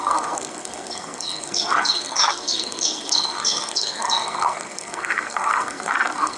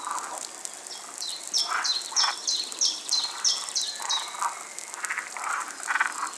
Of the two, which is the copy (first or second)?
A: first